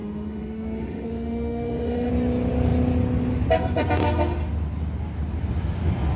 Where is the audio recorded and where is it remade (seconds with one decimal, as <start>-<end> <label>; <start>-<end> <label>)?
0.0-2.1 remade; 2.1-6.2 recorded

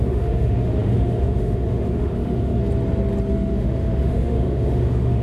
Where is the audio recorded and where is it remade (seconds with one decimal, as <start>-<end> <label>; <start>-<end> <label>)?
0.0-2.6 remade; 2.6-3.3 recorded; 3.3-5.2 remade

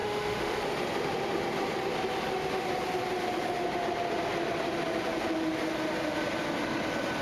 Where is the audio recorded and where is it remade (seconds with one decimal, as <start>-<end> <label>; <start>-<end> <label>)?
0.0-0.6 remade; 0.6-7.2 recorded